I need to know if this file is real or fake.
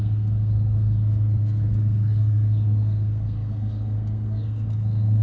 fake